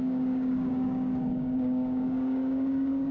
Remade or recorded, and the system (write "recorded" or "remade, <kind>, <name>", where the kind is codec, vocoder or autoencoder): remade, codec, DAC